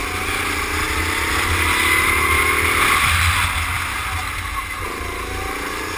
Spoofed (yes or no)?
no